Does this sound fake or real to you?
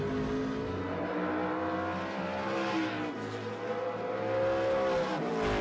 real